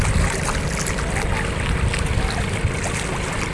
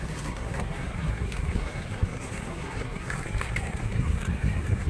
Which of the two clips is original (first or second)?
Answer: first